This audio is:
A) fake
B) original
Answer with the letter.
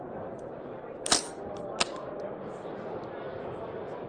B